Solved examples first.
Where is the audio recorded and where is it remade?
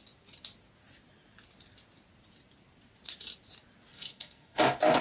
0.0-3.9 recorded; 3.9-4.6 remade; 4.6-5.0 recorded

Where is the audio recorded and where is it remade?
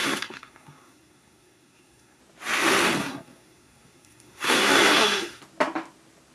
0.0-2.2 remade; 2.2-3.0 recorded; 3.0-5.4 remade; 5.4-6.3 recorded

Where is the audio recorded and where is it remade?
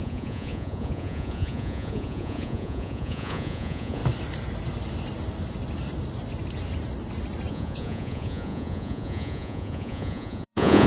0.0-4.0 remade; 4.0-7.5 recorded; 7.5-10.9 remade